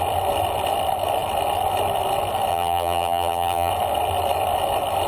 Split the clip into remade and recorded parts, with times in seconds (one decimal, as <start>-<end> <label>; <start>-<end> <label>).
0.0-2.5 recorded; 2.5-3.7 remade; 3.7-5.1 recorded